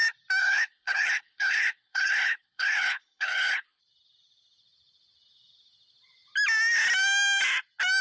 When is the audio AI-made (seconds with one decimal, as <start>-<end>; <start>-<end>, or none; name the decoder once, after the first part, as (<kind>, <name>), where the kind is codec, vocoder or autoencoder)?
0.4-3.8 (codec, HILCodec)